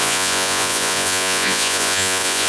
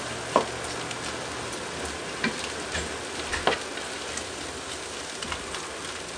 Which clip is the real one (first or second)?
second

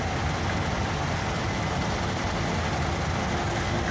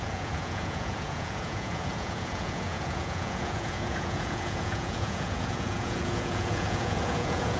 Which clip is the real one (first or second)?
first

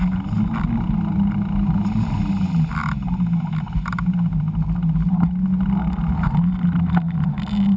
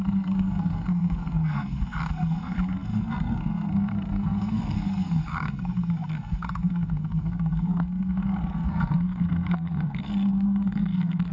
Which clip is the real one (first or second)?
first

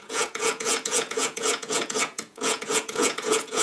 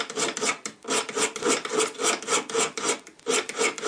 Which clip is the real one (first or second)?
second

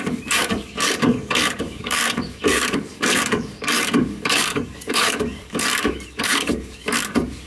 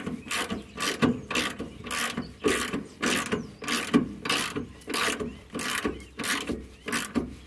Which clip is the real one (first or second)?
second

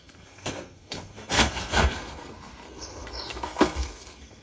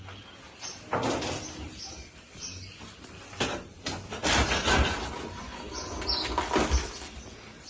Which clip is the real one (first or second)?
second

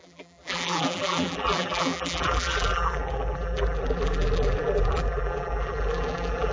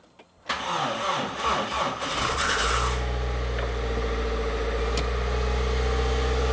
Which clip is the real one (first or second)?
second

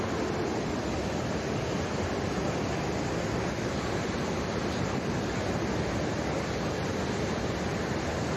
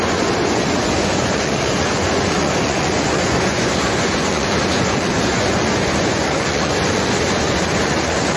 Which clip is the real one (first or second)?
first